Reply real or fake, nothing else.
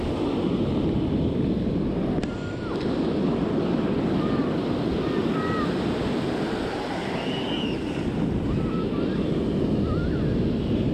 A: real